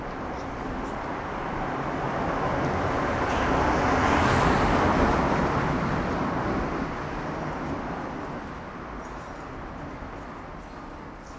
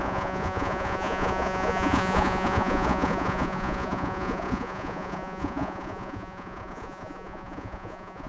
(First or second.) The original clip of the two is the first